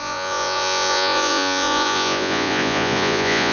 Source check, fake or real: fake